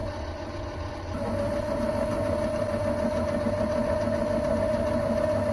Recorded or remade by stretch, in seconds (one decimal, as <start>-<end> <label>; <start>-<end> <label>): 0.0-5.5 recorded